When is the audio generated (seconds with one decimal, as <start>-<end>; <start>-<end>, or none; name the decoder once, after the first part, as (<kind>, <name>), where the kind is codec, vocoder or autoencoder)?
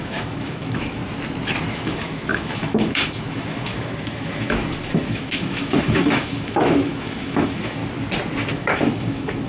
0.0-1.0 (autoencoder, DAC-VAE); 1.7-7.8; 8.5-9.5